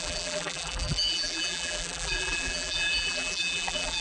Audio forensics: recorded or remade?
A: remade